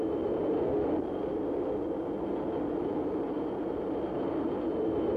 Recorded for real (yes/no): yes